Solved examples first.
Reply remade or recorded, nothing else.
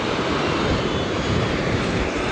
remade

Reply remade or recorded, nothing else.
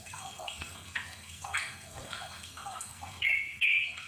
remade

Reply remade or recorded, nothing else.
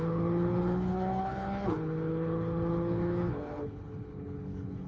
remade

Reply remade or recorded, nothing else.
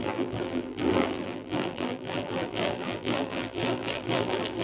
remade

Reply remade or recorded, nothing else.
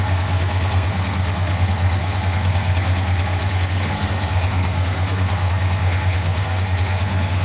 remade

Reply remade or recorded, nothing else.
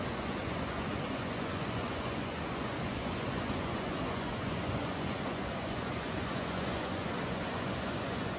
remade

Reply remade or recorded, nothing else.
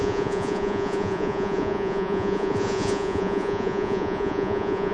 remade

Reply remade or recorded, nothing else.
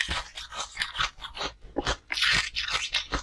recorded